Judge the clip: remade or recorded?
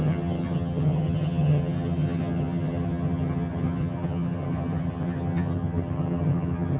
remade